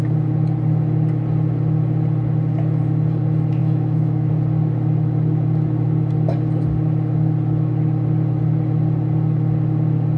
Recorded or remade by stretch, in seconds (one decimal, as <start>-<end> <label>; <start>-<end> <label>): 0.0-3.6 recorded; 3.6-4.3 remade; 4.3-10.2 recorded